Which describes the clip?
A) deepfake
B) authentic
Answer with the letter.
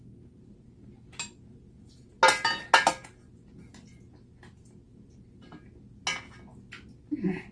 B